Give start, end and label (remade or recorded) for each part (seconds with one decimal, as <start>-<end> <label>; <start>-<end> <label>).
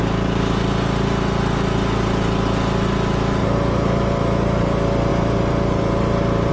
0.0-3.4 recorded; 3.4-4.6 remade; 4.6-5.1 recorded; 5.1-6.5 remade